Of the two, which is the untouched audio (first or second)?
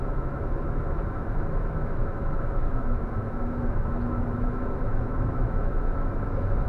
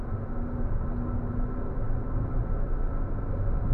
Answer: second